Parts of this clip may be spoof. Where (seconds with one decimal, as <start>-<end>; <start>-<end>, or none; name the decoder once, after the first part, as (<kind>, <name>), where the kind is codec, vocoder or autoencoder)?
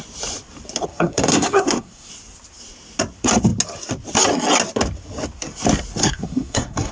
0.9-2.1 (codec, SNAC); 6.0-6.9